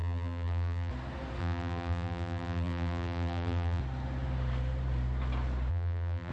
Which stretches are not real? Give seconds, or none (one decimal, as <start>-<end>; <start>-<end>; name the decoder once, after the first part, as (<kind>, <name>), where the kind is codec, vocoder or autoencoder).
0.0-0.9 (vocoder, BigVGAN v2); 1.4-3.8; 5.7-6.3